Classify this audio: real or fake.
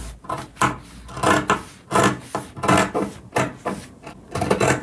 real